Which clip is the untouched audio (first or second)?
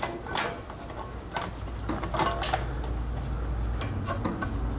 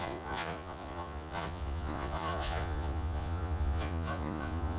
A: first